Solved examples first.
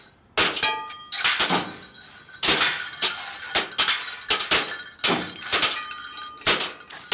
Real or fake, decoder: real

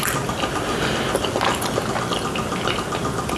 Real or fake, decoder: real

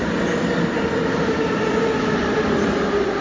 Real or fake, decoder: real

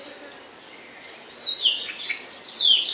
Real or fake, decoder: real